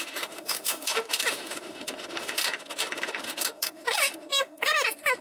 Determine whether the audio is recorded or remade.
remade